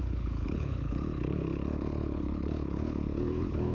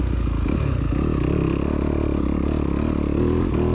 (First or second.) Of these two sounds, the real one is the second